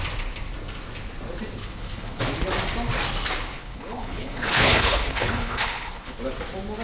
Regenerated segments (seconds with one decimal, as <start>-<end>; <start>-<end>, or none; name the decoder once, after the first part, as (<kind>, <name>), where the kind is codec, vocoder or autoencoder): 1.6-2.2 (codec, HILCodec); 3.6-6.2

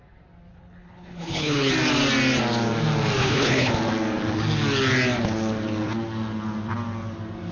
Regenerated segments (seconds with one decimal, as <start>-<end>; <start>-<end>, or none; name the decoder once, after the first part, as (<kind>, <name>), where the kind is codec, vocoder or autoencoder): 0.5-1.7 (codec, HILCodec); 3.2-3.7

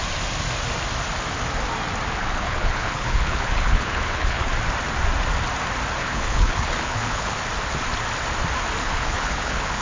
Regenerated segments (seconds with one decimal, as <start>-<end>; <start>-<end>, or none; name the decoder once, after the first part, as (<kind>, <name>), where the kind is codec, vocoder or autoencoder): 2.2-4.5 (codec, HILCodec); 6.0-7.4; 8.8-9.8